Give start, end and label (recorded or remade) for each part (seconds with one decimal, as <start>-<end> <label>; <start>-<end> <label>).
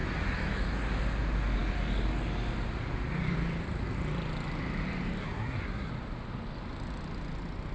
0.0-5.2 recorded; 5.2-5.9 remade; 5.9-7.7 recorded